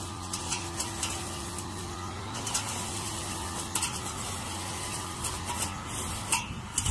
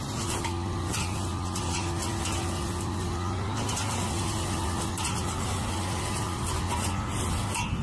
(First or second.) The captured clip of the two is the second